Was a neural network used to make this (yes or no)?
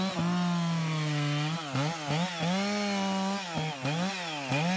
no